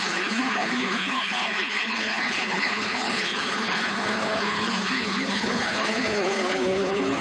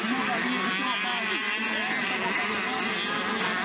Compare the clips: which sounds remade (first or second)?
first